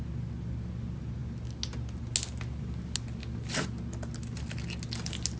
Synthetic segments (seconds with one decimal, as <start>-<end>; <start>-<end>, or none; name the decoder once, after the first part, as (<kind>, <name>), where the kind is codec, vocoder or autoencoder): none